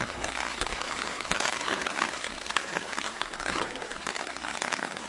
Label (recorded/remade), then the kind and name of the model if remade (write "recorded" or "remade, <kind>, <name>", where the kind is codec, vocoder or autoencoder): remade, codec, SNAC